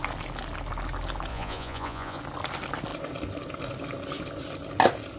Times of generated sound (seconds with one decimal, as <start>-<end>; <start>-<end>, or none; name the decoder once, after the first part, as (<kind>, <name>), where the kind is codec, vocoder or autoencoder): 1.3-2.2 (vocoder, Vocos)